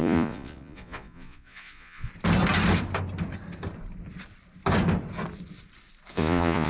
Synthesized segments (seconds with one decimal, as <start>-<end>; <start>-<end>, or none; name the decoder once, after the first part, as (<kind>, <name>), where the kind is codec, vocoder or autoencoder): 0.0-2.1 (vocoder, Vocos); 6.1-6.7